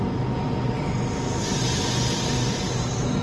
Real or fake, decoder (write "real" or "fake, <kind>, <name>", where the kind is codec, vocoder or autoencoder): real